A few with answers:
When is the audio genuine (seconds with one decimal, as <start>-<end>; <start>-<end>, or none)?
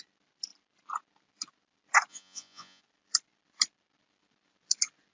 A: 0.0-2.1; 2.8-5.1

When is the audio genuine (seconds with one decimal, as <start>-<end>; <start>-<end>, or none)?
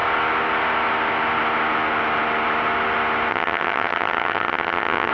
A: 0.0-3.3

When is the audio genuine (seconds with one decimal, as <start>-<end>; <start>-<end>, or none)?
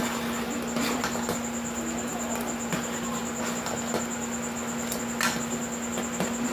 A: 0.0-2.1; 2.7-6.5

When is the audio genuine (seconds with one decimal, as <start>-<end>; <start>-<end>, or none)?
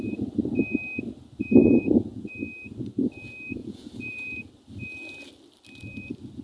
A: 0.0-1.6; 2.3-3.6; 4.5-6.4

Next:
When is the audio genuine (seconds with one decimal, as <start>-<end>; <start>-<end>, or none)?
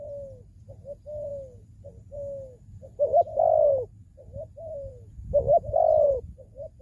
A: 0.0-6.8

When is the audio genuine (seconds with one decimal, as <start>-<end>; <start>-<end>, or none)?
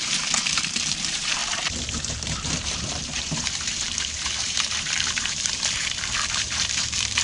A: 1.4-2.0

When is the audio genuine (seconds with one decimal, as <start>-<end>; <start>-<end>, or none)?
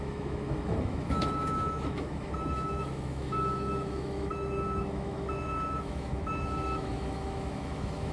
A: none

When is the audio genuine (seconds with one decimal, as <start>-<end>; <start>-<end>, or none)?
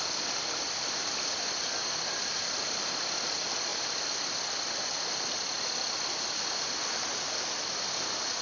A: 0.0-8.4